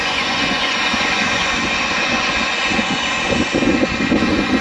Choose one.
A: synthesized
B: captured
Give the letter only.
A